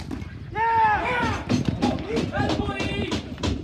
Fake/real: real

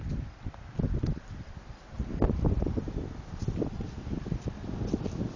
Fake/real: real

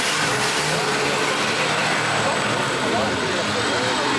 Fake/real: real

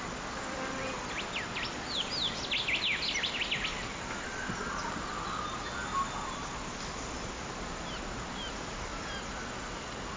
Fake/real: real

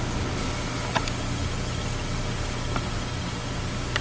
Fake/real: real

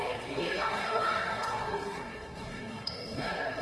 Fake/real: fake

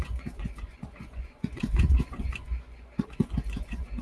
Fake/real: fake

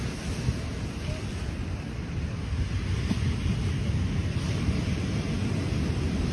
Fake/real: real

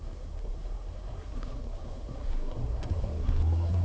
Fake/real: fake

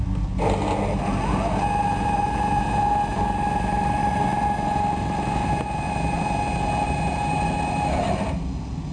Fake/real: real